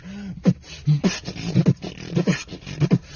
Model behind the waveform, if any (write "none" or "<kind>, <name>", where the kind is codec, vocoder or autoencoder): none